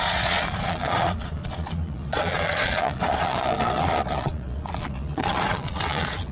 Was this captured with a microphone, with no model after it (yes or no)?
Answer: no